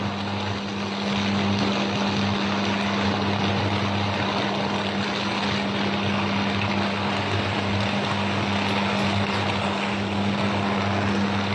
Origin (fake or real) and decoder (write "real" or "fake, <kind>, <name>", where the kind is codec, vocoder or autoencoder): real